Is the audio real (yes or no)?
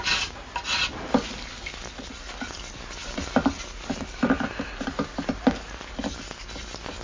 yes